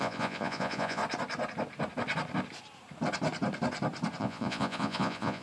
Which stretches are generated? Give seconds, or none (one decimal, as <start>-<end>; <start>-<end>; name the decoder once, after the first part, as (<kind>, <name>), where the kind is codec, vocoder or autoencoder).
0.0-1.0 (vocoder, Vocos); 4.2-5.4